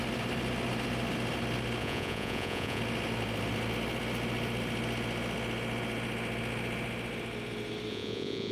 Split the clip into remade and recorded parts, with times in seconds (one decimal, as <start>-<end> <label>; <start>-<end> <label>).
0.0-1.8 recorded; 1.8-2.8 remade; 2.8-7.9 recorded; 7.9-8.5 remade

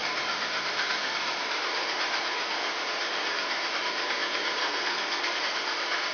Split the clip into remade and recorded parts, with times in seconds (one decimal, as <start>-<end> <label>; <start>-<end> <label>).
0.0-4.6 recorded; 4.6-5.4 remade; 5.4-6.1 recorded

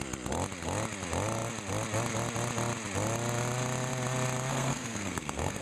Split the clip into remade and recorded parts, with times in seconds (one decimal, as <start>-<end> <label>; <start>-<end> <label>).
0.0-4.5 recorded; 4.5-5.6 remade

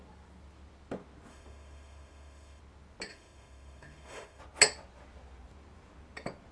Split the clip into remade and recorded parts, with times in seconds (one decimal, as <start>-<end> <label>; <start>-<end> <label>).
0.0-1.3 recorded; 1.3-2.6 remade; 2.6-3.1 recorded; 3.1-4.4 remade; 4.4-6.5 recorded

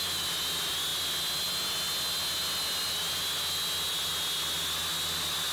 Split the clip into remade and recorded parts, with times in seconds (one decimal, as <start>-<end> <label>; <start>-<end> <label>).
0.0-5.5 recorded